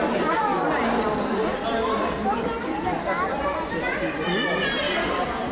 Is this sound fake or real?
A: real